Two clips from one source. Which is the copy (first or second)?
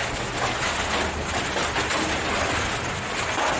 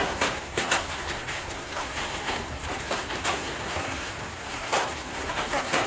second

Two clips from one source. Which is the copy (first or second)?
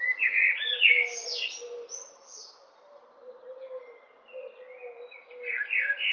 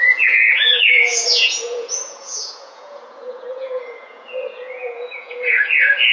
second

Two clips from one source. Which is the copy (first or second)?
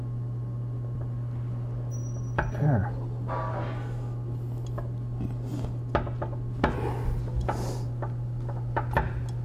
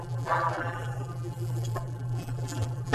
second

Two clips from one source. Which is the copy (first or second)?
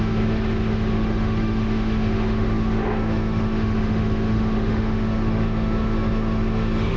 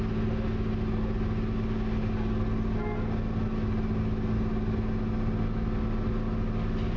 first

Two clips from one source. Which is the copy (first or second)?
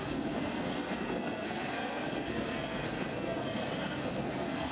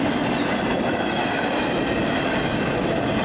first